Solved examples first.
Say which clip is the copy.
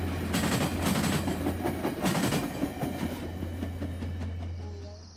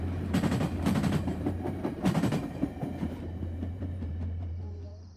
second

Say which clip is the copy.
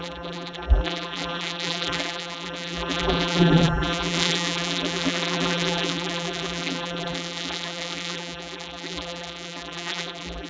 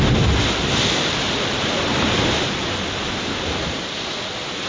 first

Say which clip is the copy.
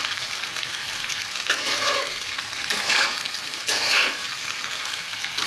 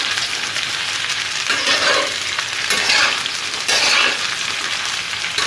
first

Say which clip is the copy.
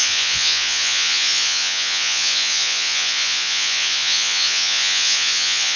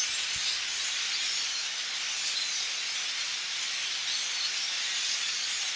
first